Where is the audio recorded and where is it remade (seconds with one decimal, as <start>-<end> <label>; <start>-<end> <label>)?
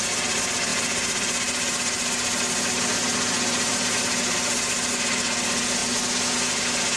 0.0-7.0 recorded